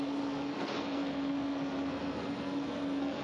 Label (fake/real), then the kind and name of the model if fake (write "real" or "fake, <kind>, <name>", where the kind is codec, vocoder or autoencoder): fake, codec, SNAC